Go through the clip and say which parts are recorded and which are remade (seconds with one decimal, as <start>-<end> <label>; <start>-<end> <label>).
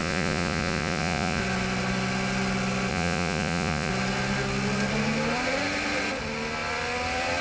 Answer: 0.0-1.4 remade; 1.4-2.9 recorded; 2.9-3.9 remade; 3.9-7.4 recorded